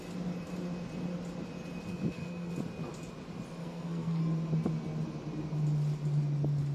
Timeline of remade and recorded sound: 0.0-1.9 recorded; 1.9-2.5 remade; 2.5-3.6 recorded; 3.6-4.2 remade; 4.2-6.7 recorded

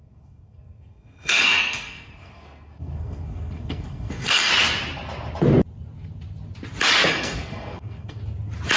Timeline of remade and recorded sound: 0.0-4.5 remade; 4.5-7.1 recorded; 7.1-8.2 remade; 8.2-8.8 recorded

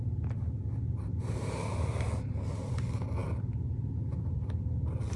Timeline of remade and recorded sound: 0.0-5.2 recorded

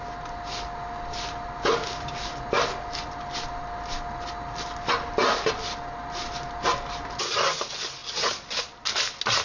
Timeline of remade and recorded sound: 0.0-9.4 recorded

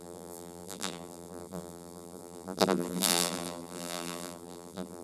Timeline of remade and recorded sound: 0.0-5.0 remade

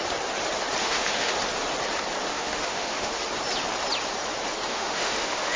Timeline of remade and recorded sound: 0.0-0.8 recorded; 0.8-1.3 remade; 1.3-2.3 recorded; 2.3-3.2 remade; 3.2-4.7 recorded; 4.7-5.6 remade